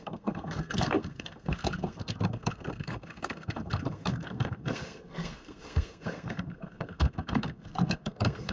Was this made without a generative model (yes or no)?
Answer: no